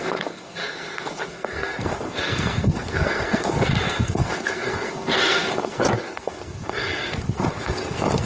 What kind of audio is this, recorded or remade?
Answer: remade